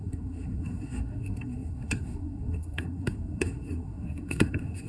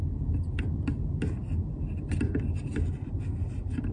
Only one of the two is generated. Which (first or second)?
first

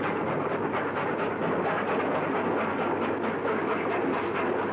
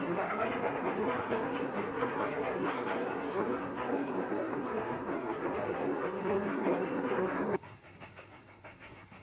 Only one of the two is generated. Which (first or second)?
second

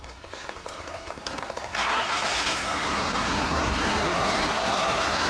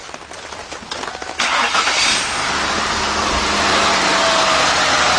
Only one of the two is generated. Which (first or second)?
first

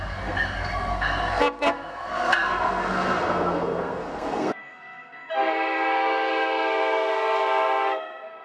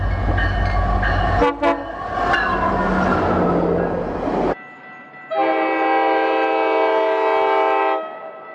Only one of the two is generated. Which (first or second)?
first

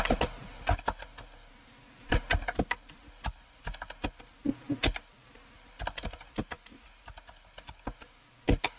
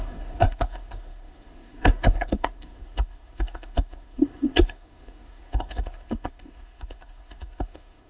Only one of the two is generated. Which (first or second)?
second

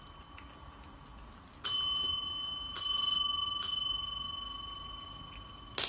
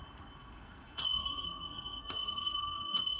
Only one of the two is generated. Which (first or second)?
second